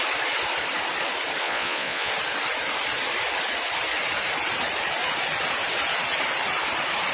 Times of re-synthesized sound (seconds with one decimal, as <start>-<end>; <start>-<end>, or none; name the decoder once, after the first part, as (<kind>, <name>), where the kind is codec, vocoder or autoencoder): 1.4-2.1 (vocoder, Vocos)